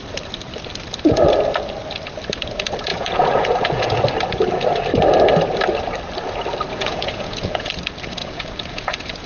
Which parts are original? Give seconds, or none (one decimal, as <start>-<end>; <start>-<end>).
0.0-2.9; 4.0-6.7; 7.7-8.2